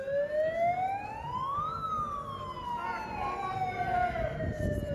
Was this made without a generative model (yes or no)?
yes